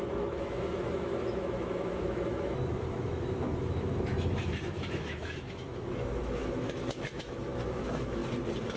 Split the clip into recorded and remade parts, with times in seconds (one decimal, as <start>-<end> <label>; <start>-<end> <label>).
0.0-8.2 remade; 8.2-8.8 recorded